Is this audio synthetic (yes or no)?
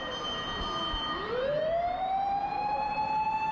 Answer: yes